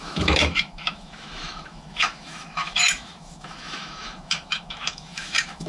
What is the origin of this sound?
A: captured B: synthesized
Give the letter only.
B